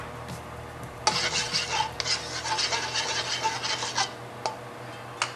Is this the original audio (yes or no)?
yes